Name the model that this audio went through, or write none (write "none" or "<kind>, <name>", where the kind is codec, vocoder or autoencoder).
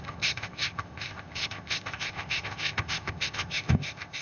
codec, ZipCodec